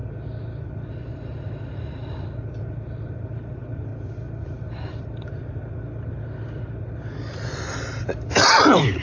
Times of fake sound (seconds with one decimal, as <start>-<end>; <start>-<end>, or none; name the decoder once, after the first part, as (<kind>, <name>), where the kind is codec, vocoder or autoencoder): 0.6-3.9 (vocoder, BigVGAN v2); 4.9-5.6; 8.0-9.0